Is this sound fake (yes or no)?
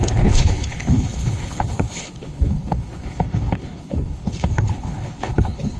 yes